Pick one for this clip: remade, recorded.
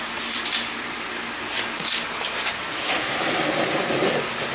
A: recorded